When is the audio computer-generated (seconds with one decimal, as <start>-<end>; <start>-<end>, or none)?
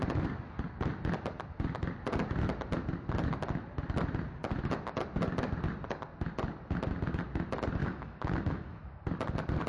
7.8-9.0